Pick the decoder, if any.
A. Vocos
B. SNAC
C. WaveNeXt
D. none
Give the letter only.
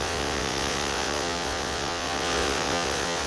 C